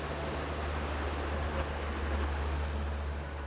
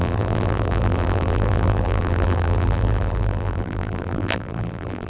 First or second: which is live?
first